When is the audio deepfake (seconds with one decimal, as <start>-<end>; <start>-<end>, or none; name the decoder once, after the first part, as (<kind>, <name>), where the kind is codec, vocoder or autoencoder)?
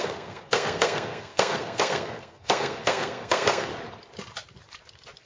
0.0-3.7 (codec, SNAC)